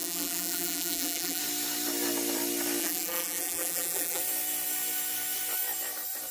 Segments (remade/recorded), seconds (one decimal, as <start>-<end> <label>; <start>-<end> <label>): 0.0-1.4 remade; 1.4-2.8 recorded; 2.8-4.2 remade; 4.2-6.3 recorded